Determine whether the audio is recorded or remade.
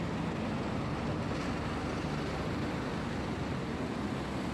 recorded